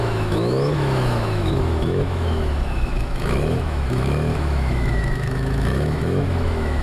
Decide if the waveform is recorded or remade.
remade